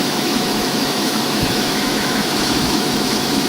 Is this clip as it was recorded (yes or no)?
no